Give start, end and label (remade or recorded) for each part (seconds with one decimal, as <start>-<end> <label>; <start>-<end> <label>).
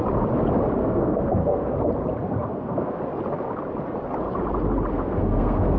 0.0-0.8 recorded; 0.8-1.9 remade; 1.9-2.5 recorded; 2.5-3.0 remade; 3.0-4.9 recorded; 4.9-5.8 remade